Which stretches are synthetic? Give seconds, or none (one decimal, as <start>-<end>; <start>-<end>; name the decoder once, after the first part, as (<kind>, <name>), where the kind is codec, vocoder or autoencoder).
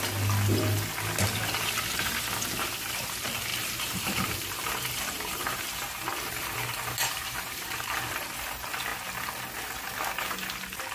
3.5-8.4 (vocoder, BigVGAN v2)